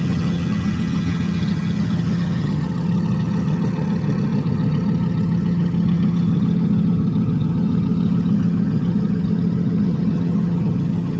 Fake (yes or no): yes